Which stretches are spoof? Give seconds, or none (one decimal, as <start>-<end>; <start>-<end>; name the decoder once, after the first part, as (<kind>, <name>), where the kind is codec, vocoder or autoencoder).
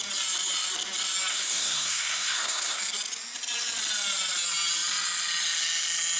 1.3-2.8 (codec, SNAC)